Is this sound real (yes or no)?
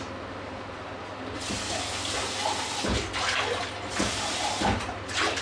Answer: yes